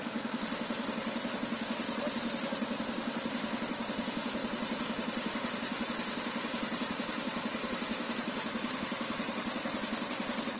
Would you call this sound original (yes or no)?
yes